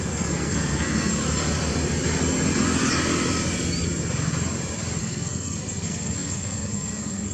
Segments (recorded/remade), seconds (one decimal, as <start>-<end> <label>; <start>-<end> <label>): 0.0-1.2 remade; 1.2-5.0 recorded; 5.0-7.3 remade